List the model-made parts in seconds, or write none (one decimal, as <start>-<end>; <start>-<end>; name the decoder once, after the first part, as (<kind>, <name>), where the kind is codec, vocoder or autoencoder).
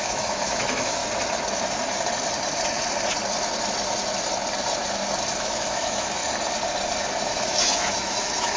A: 0.0-1.0 (autoencoder, DAC-VAE); 5.4-6.2; 7.3-8.6